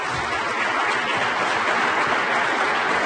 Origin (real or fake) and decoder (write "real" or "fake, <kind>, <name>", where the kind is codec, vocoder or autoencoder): real